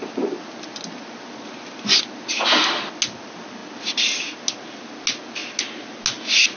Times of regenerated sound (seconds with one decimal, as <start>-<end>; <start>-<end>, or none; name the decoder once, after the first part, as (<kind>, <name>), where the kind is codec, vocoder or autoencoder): none